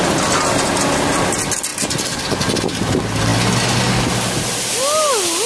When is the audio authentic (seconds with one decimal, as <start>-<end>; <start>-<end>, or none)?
0.0-5.5